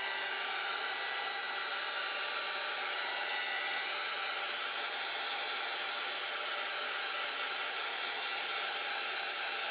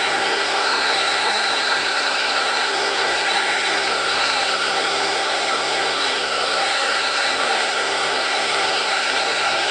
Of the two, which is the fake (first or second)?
second